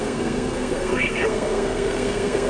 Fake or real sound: fake